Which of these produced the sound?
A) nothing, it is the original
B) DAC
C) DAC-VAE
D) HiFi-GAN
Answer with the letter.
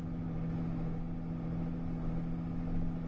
A